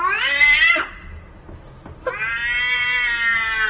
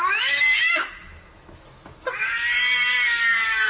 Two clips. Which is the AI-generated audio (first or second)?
second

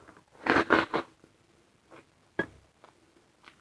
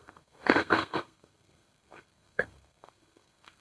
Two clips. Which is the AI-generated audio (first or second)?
second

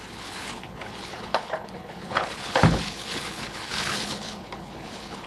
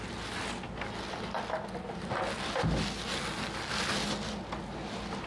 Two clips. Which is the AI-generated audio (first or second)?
first